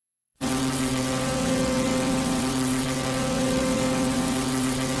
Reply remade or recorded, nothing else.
remade